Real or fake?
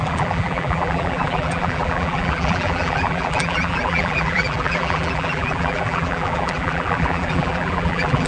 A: fake